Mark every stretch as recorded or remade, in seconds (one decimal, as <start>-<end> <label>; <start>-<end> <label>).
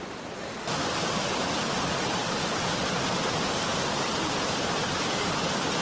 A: 0.0-5.8 recorded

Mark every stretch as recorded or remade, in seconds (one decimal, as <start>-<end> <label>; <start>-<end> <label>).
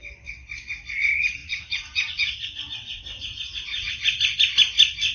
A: 0.0-1.4 recorded; 1.4-3.9 remade; 3.9-5.1 recorded